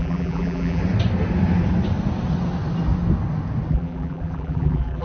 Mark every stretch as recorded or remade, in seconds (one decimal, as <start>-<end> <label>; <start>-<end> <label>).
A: 0.0-0.8 remade; 0.8-3.7 recorded; 3.7-5.0 remade